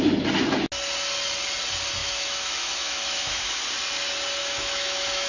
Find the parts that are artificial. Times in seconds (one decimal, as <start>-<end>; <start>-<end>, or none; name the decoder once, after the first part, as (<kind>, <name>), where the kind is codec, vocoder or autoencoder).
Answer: 2.0-3.6 (autoencoder, DAC-VAE); 4.4-5.3